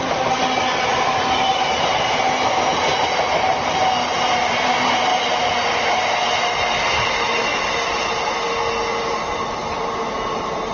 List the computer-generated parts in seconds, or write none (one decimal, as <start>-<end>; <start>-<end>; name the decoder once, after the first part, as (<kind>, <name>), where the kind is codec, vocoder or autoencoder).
none